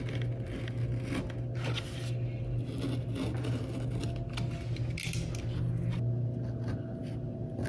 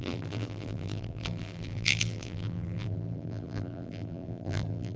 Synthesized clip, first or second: second